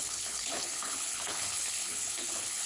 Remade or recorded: remade